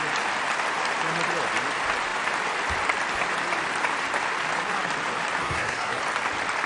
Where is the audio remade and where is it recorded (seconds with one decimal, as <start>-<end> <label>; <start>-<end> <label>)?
0.0-5.4 recorded; 5.4-6.0 remade; 6.0-6.7 recorded